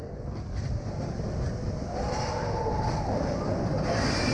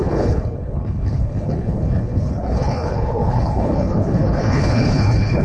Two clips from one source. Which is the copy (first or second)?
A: second